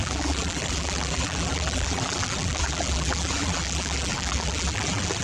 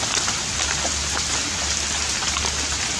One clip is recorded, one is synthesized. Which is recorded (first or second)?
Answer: second